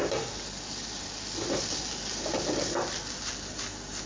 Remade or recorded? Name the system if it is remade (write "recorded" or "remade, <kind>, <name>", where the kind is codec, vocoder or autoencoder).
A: recorded